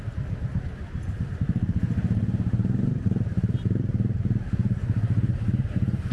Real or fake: fake